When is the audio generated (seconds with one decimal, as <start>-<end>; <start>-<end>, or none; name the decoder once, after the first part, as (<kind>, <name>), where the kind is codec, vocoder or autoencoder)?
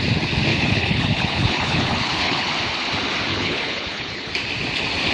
0.5-2.5 (codec, HILCodec); 3.3-4.3